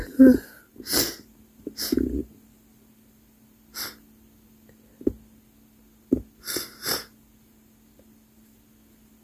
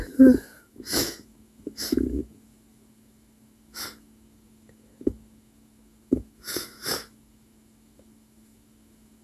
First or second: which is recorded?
first